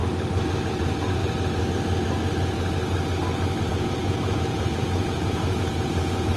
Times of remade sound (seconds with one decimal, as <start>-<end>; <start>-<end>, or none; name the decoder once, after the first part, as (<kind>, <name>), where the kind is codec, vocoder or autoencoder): 0.7-1.2 (vocoder, Vocos); 3.7-6.4